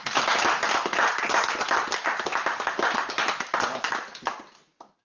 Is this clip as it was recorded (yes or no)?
yes